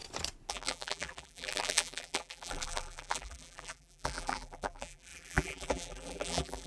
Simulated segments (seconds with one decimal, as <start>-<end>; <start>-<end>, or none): 0.5-6.7